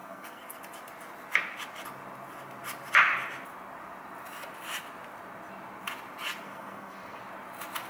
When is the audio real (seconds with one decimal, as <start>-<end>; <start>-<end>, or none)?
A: 0.6-6.4; 7.2-7.9